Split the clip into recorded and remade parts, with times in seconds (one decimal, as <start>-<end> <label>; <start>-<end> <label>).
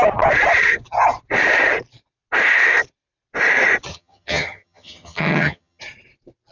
0.0-3.9 recorded; 3.9-5.8 remade; 5.8-6.5 recorded